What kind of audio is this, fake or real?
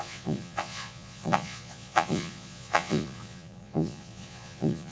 fake